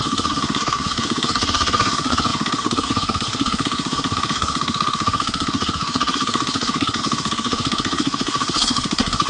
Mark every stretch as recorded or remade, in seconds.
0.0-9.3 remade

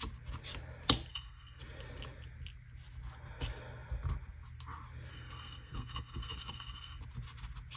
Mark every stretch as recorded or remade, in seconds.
0.0-1.1 recorded; 1.1-1.6 remade; 1.6-5.1 recorded; 5.1-7.0 remade; 7.0-7.8 recorded

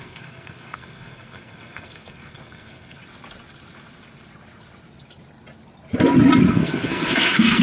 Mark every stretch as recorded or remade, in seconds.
0.0-3.0 remade; 3.0-6.5 recorded; 6.5-7.6 remade

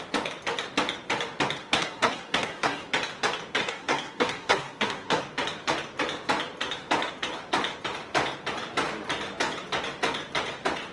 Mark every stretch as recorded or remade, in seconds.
0.0-1.6 recorded; 1.6-2.9 remade; 2.9-3.6 recorded; 3.6-5.2 remade; 5.2-10.9 recorded

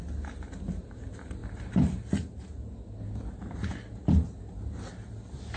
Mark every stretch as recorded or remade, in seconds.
0.0-5.6 recorded

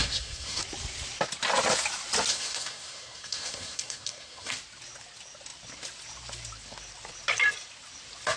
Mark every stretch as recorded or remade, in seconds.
0.0-0.6 remade; 0.6-2.3 recorded; 2.3-4.5 remade; 4.5-8.4 recorded